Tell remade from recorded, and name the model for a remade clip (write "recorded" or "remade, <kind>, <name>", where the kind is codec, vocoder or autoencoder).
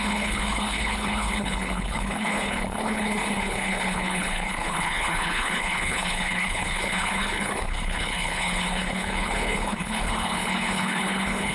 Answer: remade, codec, HILCodec